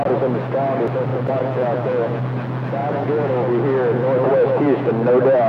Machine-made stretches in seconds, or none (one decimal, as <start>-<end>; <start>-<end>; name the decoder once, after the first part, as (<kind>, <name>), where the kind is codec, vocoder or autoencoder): 1.1-2.2 (vocoder, Vocos); 2.8-3.3; 4.3-4.9